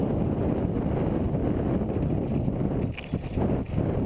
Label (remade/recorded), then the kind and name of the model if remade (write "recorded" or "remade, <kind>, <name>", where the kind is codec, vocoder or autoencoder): recorded